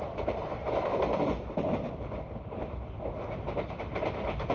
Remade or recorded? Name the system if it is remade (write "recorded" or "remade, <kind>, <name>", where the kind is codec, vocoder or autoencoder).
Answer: remade, vocoder, BigVGAN v2